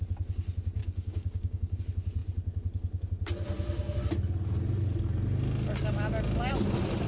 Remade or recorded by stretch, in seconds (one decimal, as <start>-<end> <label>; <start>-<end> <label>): 0.0-0.8 recorded; 0.8-1.8 remade; 1.8-7.1 recorded